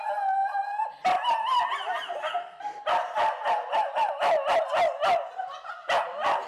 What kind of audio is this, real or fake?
real